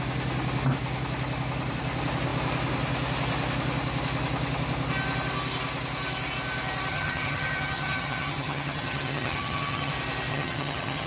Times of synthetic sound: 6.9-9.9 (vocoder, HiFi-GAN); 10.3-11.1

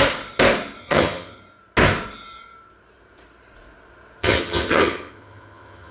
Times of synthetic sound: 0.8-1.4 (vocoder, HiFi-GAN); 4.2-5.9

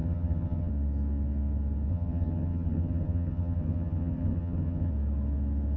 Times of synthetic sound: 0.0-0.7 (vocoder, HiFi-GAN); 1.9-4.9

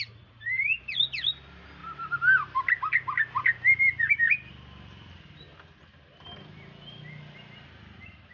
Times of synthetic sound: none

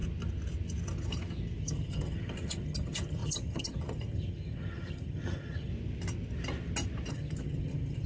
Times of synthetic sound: 1.6-5.7 (vocoder, HiFi-GAN); 7.1-8.1